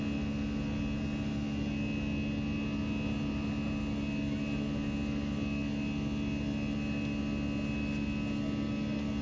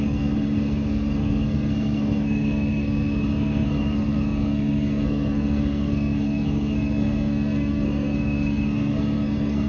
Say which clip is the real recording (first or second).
first